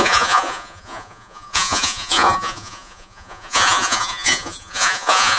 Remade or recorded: remade